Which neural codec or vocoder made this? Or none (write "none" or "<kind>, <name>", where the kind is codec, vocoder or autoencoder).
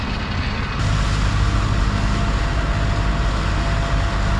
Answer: none